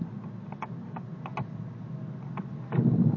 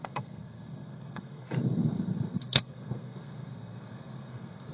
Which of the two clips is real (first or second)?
first